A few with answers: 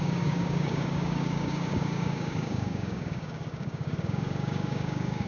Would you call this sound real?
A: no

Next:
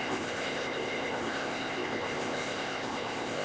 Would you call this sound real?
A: no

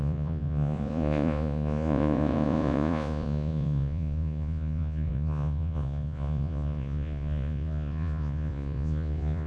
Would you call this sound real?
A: no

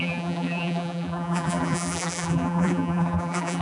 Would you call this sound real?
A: no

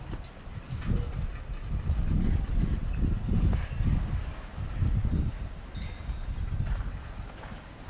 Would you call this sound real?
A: yes